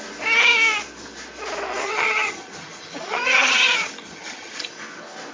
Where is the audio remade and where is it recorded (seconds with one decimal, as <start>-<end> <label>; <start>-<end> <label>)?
0.0-1.8 recorded; 1.8-4.7 remade; 4.7-5.3 recorded